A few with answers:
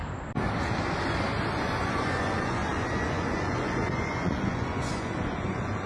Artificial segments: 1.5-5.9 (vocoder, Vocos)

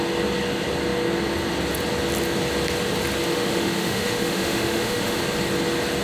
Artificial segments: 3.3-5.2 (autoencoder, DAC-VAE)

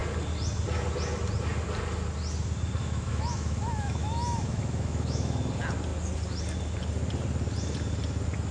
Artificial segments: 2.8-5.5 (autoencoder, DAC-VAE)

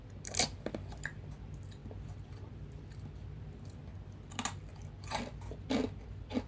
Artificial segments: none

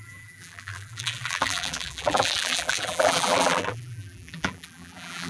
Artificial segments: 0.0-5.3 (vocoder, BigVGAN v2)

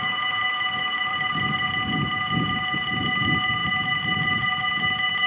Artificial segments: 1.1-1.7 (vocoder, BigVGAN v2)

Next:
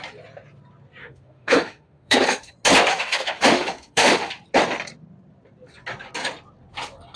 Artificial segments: 1.0-2.5 (autoencoder, DAC-VAE); 2.9-4.3